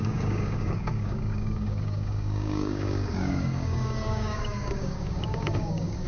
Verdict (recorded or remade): remade